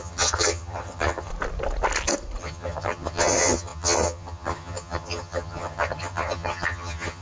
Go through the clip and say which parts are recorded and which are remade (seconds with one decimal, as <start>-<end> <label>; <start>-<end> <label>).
0.0-1.3 remade; 1.3-2.4 recorded; 2.4-7.2 remade